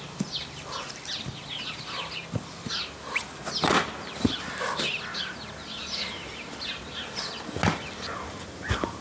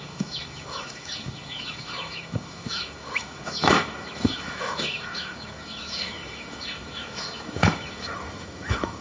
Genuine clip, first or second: first